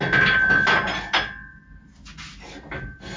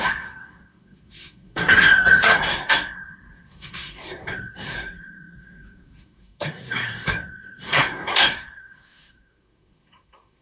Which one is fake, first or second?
second